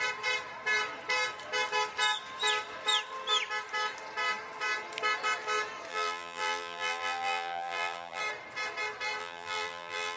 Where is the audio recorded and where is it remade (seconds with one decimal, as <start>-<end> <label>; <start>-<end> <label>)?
0.0-5.9 recorded; 5.9-8.2 remade; 8.2-9.2 recorded; 9.2-10.2 remade